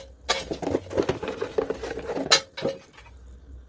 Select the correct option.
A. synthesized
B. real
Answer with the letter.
B